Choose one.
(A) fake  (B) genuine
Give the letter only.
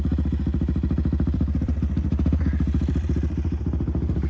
A